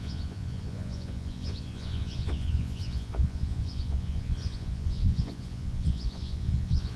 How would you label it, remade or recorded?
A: remade